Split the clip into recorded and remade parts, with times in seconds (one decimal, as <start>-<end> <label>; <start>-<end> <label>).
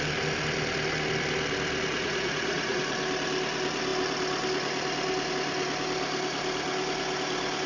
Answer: 0.0-1.9 recorded; 1.9-2.8 remade; 2.8-7.7 recorded